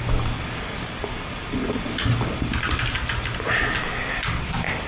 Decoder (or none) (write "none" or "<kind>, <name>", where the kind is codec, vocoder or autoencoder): none